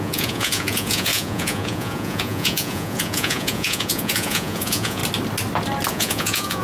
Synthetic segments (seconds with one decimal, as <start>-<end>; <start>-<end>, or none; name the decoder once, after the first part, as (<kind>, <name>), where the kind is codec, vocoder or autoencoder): 0.0-5.0 (vocoder, Vocos); 5.9-6.6